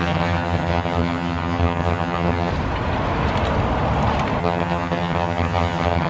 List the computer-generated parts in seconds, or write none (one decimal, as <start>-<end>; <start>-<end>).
0.0-2.5; 4.4-6.1